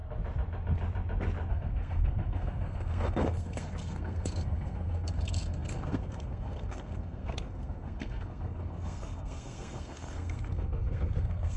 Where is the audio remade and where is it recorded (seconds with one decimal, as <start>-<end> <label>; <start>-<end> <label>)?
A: 0.0-1.5 recorded; 1.5-11.6 remade